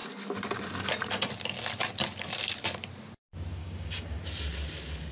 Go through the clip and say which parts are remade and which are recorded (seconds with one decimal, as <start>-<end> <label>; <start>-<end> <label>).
0.0-3.6 recorded; 3.6-4.2 remade; 4.2-5.1 recorded